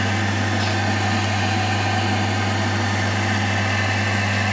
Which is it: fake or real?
real